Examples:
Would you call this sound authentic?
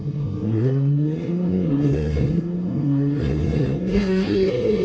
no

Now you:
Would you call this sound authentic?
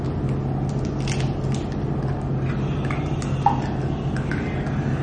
yes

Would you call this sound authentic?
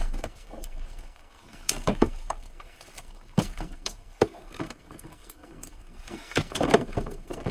no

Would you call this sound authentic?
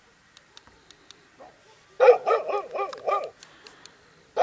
yes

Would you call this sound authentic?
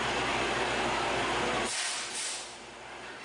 yes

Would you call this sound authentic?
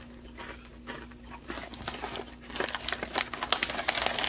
yes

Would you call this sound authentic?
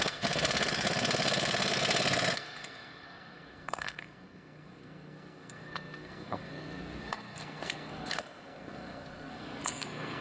no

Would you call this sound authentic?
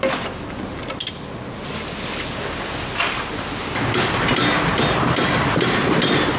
yes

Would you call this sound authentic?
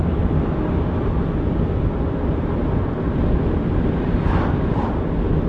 yes